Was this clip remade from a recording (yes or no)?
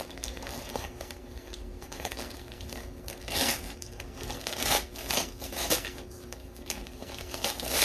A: yes